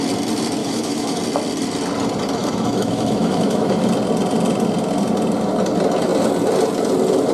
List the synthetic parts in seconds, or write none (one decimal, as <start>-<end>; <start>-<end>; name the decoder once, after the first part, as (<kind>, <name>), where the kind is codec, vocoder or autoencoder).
0.6-1.2 (autoencoder, DAC-VAE); 2.4-3.9